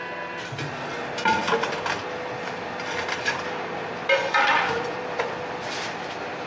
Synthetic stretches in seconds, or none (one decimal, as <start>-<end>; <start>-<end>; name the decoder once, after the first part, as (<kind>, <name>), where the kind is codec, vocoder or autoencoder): none